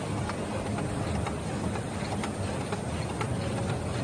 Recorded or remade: recorded